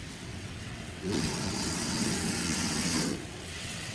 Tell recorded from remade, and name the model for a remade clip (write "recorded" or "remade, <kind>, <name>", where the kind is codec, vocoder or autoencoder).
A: remade, vocoder, WaveNeXt